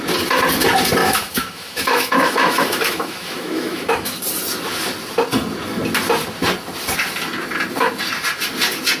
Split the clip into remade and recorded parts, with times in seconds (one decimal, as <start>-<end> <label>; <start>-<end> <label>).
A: 0.0-1.0 recorded; 1.0-4.2 remade; 4.2-9.0 recorded